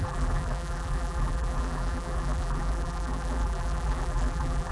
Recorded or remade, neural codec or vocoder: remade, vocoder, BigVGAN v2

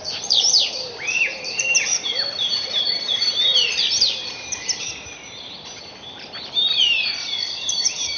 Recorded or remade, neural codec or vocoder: remade, vocoder, BigVGAN v2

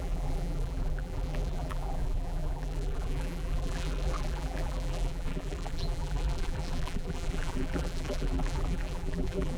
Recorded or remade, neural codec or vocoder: remade, vocoder, BigVGAN v2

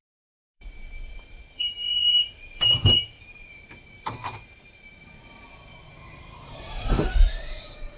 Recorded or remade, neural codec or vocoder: remade, vocoder, BigVGAN v2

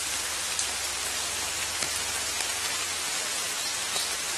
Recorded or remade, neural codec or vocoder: remade, vocoder, BigVGAN v2